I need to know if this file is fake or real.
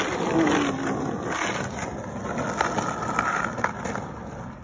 real